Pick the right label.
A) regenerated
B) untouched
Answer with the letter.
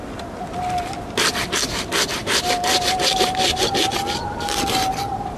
B